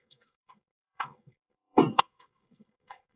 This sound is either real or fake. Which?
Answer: fake